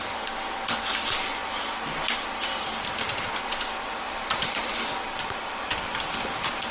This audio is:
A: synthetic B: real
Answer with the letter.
B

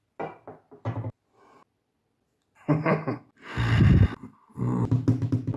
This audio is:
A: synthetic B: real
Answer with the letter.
B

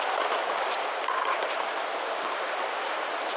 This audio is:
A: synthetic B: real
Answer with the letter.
B